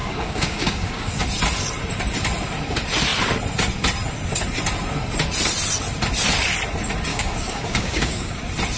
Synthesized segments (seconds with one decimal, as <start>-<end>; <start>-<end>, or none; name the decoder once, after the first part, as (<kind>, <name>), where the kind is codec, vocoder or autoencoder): 0.0-1.2 (codec, DAC); 7.1-8.4